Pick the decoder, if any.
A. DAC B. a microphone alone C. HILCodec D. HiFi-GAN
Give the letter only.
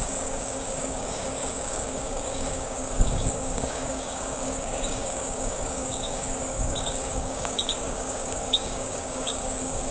A